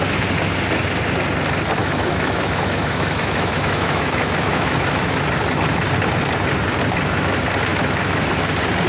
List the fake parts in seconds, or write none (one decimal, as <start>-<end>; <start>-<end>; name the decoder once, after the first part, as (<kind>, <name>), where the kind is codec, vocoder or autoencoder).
1.8-5.2 (autoencoder, DAC-VAE); 7.7-8.3